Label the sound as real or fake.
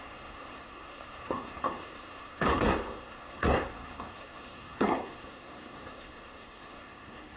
fake